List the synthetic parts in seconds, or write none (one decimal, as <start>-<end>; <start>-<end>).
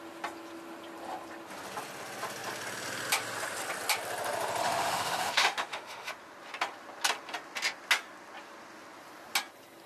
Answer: 4.6-6.1